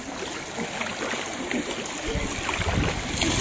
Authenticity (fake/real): real